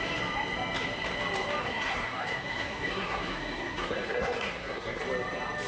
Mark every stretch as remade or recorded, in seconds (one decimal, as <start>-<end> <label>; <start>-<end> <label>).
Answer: 0.0-1.6 recorded; 1.6-5.0 remade; 5.0-5.7 recorded

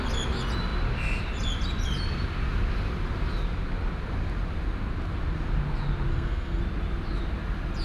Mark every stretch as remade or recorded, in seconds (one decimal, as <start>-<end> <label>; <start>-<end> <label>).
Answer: 0.0-6.1 recorded; 6.1-6.6 remade; 6.6-7.8 recorded

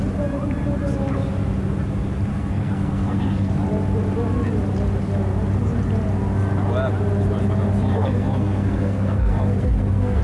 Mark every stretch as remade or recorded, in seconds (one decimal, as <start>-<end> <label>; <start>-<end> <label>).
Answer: 0.0-2.3 recorded; 2.3-3.5 remade; 3.5-7.9 recorded; 7.9-10.2 remade